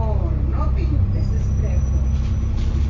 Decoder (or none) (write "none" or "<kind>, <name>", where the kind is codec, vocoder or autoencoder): none